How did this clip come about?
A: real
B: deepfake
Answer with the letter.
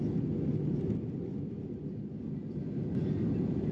A